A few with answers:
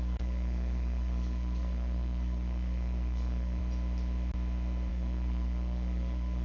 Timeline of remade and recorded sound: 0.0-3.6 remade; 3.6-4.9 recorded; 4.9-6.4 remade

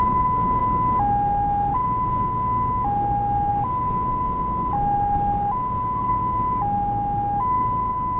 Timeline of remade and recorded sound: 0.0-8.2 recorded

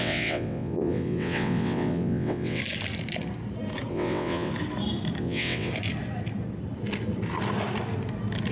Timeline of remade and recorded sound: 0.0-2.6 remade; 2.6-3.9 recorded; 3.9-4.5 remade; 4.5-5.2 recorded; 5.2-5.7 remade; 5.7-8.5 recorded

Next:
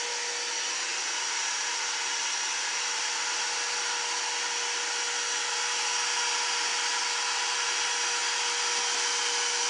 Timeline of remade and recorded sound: 0.0-0.9 recorded; 0.9-2.3 remade; 2.3-9.7 recorded